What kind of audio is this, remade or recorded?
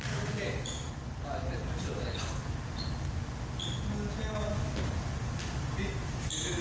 recorded